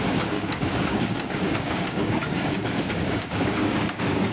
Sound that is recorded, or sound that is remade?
remade